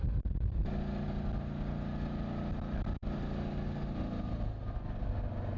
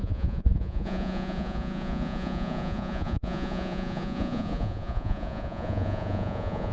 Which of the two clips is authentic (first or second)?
first